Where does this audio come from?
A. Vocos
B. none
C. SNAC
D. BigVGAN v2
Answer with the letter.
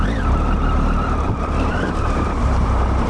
D